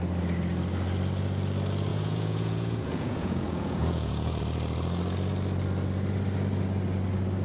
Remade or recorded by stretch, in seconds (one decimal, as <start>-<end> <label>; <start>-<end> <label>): 0.0-1.9 recorded; 1.9-4.4 remade; 4.4-7.4 recorded